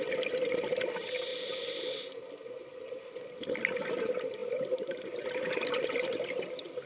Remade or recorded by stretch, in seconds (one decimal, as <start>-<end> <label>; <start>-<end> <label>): 0.0-1.3 recorded; 1.3-2.0 remade; 2.0-6.9 recorded